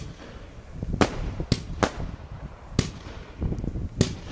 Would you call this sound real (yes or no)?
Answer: yes